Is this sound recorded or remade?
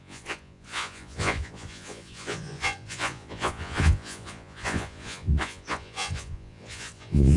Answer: remade